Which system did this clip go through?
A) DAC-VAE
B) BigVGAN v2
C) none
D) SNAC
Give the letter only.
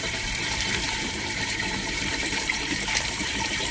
B